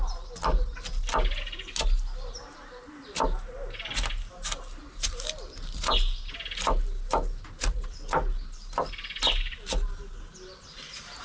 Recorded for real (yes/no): yes